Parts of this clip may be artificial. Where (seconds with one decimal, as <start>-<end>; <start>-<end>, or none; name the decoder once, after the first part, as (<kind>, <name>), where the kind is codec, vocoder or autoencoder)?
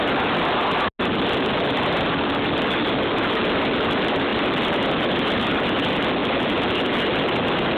none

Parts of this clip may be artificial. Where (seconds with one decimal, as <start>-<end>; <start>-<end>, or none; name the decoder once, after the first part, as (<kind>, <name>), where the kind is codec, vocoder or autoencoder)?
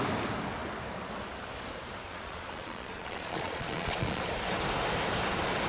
2.1-4.2 (vocoder, Vocos)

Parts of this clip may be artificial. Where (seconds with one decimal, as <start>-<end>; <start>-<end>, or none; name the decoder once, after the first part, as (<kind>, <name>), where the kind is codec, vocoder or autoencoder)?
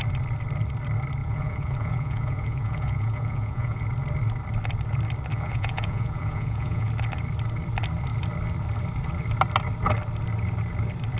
1.2-3.8 (vocoder, Vocos); 5.3-6.9